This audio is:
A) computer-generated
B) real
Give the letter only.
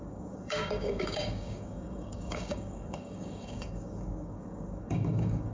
A